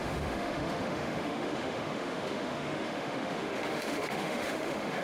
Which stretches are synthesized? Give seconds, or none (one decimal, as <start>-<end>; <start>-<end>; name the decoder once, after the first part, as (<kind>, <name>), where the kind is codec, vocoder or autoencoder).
0.0-5.0 (autoencoder, DAC-VAE)